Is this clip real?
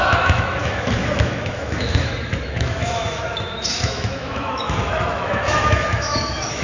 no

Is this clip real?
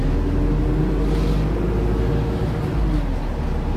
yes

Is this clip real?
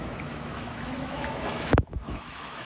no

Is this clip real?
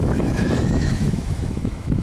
no